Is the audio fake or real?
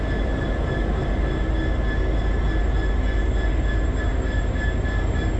real